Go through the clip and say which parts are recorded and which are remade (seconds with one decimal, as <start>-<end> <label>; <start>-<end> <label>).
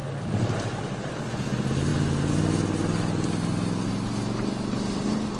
0.0-5.4 recorded